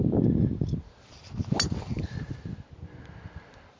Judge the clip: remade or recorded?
recorded